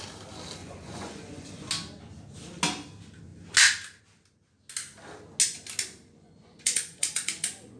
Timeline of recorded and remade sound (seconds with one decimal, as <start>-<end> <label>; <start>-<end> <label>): 0.0-0.6 recorded; 0.6-1.7 remade; 1.7-6.1 recorded; 6.1-7.8 remade